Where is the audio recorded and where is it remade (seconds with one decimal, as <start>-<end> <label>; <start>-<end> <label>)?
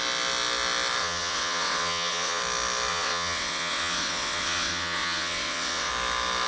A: 0.0-1.0 recorded; 1.0-2.4 remade; 2.4-2.9 recorded; 2.9-5.9 remade; 5.9-6.5 recorded